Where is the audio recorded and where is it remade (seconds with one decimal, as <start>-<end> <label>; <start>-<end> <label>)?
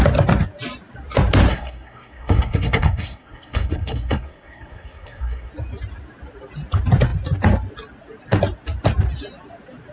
0.0-1.5 recorded; 1.5-5.5 remade; 5.5-9.9 recorded